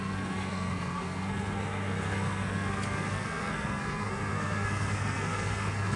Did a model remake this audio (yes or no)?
yes